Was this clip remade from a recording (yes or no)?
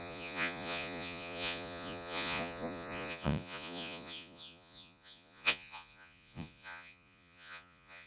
yes